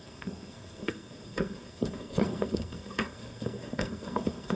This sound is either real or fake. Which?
fake